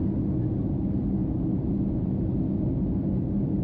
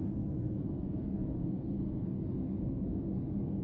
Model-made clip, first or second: second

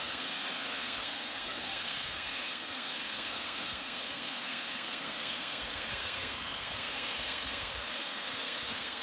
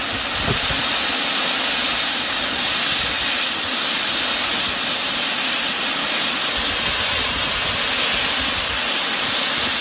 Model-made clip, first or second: first